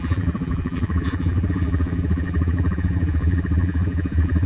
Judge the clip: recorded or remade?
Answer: remade